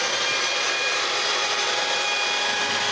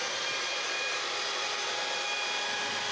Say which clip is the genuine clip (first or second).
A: first